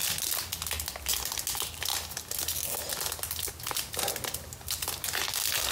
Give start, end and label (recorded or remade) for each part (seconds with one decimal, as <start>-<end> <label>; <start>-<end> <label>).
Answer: 0.0-5.7 recorded